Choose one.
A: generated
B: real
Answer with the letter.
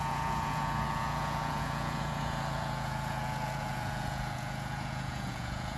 A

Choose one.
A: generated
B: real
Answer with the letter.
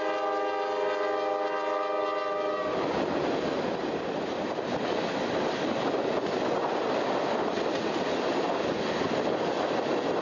B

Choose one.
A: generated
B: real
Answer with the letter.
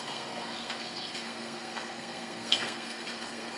A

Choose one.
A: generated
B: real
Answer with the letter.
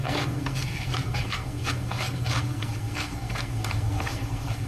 A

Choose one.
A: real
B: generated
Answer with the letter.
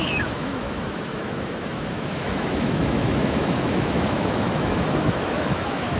B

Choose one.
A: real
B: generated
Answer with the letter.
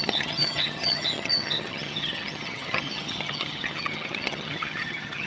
B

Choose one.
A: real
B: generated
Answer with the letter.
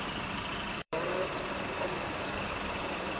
B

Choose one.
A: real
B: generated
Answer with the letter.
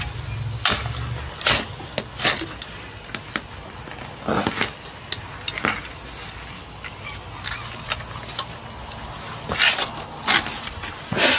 A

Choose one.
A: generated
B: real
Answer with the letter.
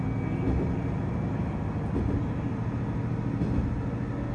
B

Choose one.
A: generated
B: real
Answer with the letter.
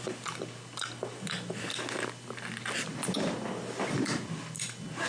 B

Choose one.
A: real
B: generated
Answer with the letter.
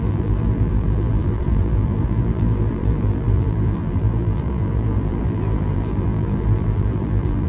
B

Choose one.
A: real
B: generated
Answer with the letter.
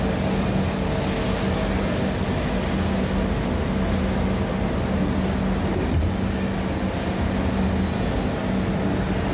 A